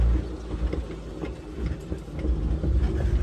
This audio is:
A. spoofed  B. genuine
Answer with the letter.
B